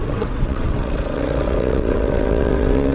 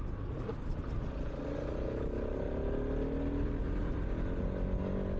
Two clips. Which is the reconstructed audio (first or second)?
first